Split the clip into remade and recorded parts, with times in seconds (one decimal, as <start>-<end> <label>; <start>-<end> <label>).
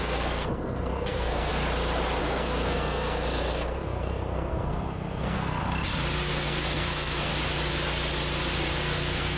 0.0-1.5 remade; 1.5-2.2 recorded; 2.2-5.6 remade; 5.6-6.3 recorded; 6.3-7.3 remade; 7.3-8.8 recorded; 8.8-9.4 remade